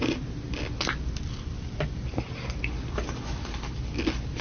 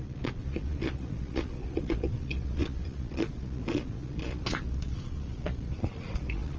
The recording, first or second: first